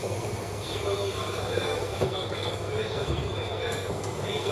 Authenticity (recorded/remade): remade